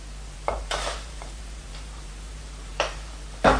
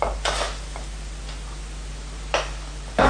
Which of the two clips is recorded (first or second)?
second